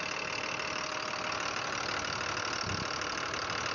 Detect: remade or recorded recorded